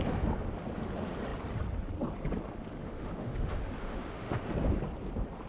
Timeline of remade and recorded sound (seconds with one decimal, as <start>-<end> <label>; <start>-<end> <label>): 0.0-2.8 recorded; 2.8-4.5 remade; 4.5-5.5 recorded